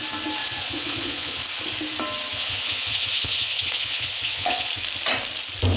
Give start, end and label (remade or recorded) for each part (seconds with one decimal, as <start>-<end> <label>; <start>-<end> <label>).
0.0-0.4 recorded; 0.4-1.4 remade; 1.4-2.3 recorded; 2.3-4.7 remade; 4.7-5.8 recorded